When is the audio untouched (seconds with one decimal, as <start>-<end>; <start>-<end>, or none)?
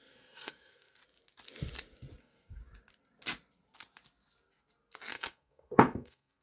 1.0-2.2; 2.6-5.1